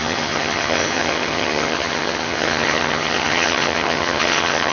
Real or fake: fake